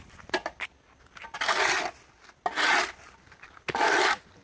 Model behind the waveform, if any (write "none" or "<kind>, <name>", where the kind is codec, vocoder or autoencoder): none